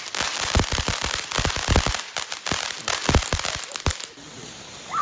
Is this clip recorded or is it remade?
recorded